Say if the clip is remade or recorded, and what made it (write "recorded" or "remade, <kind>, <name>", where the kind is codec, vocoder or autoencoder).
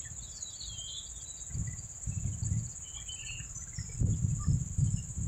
remade, vocoder, BigVGAN v2